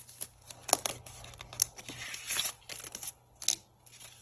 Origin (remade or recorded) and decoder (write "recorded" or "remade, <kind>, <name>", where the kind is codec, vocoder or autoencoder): recorded